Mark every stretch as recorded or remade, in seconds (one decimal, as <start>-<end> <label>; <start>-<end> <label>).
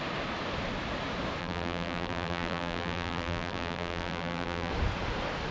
0.0-1.4 recorded; 1.4-4.7 remade; 4.7-5.5 recorded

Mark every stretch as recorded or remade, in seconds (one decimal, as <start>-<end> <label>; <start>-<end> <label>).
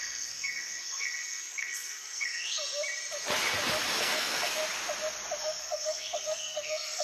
0.0-2.6 remade; 2.6-4.0 recorded; 4.0-4.6 remade; 4.6-5.6 recorded; 5.6-7.0 remade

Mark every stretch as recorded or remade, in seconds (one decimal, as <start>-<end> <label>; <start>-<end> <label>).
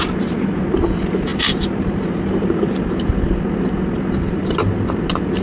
0.0-5.4 recorded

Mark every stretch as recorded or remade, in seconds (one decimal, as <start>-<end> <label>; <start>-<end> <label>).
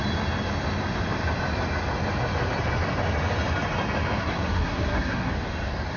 0.0-4.2 recorded; 4.2-5.3 remade; 5.3-6.0 recorded